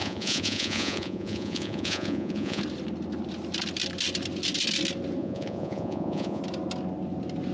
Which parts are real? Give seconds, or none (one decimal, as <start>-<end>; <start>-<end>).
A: 2.6-5.2; 6.4-7.5